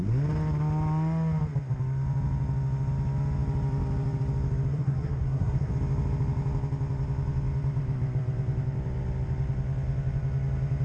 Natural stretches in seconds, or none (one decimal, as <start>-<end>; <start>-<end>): 0.0-4.7; 5.7-10.8